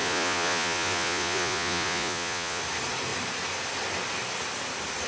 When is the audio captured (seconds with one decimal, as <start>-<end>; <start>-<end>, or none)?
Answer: 2.6-5.1